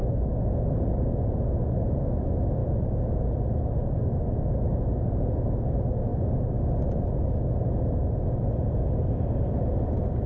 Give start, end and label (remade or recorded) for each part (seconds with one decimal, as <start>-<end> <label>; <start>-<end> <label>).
0.0-10.3 recorded